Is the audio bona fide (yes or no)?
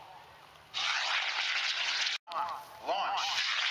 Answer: yes